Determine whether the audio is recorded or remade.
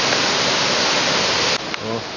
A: recorded